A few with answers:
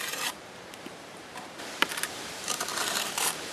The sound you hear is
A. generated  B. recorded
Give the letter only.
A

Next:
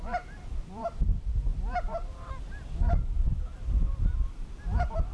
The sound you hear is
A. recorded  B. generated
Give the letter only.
A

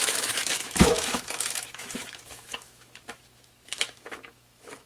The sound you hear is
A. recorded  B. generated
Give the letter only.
B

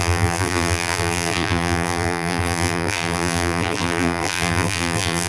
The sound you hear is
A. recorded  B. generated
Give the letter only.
B